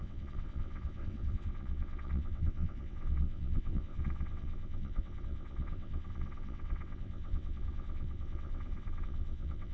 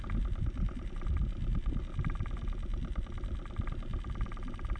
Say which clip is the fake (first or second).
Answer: first